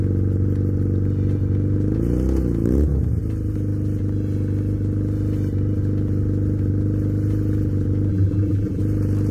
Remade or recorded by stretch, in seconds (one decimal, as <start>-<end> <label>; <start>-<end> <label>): 0.0-8.1 recorded; 8.1-8.8 remade; 8.8-9.3 recorded